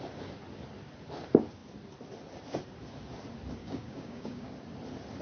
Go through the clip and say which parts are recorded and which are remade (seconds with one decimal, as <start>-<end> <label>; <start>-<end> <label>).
0.0-3.6 recorded; 3.6-4.5 remade; 4.5-5.2 recorded